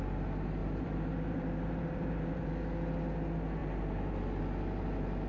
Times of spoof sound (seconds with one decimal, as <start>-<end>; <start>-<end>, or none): 0.6-2.5; 3.6-4.4